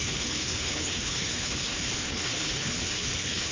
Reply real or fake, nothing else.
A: fake